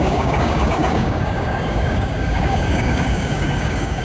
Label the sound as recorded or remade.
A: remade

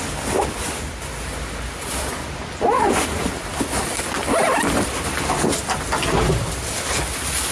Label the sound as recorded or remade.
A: recorded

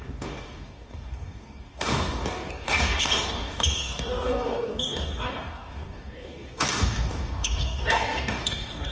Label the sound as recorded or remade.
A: remade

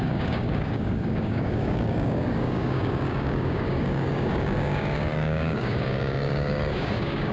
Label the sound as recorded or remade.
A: remade